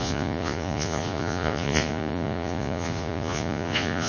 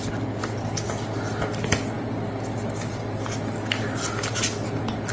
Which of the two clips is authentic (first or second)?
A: second